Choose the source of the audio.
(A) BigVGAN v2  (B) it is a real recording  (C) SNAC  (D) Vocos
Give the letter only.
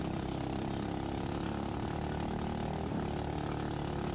B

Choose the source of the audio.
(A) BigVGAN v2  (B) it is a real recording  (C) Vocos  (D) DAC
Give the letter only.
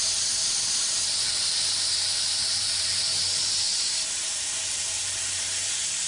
B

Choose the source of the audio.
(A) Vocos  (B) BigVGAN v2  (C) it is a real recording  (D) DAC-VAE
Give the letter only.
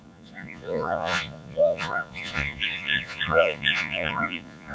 A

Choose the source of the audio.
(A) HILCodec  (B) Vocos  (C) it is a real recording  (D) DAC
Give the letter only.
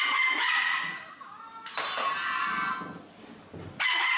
C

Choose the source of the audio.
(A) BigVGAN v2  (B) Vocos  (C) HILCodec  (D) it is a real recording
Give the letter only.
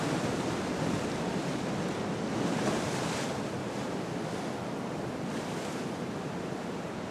D